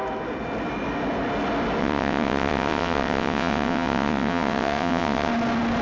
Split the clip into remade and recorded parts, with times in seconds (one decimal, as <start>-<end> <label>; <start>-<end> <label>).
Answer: 0.0-1.8 recorded; 1.8-5.3 remade; 5.3-5.8 recorded